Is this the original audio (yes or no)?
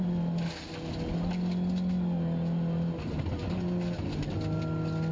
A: yes